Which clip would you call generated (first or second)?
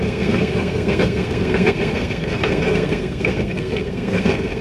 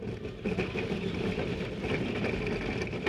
first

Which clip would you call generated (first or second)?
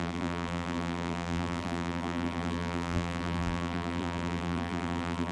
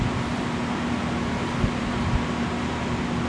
first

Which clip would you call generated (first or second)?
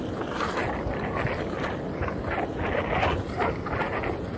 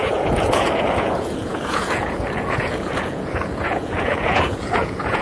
second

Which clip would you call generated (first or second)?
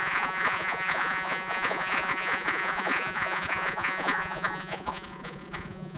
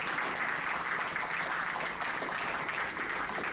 first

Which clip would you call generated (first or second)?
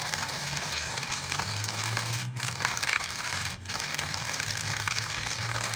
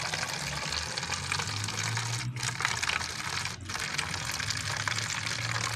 first